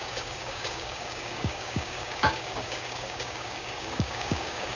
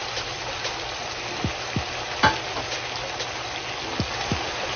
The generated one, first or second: first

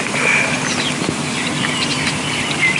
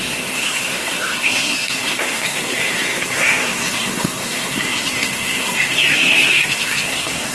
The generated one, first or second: second